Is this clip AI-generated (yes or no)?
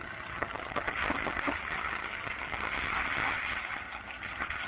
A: yes